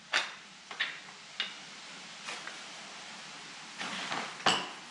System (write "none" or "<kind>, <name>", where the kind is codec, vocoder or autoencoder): none